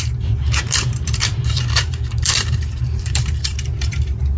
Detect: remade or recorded remade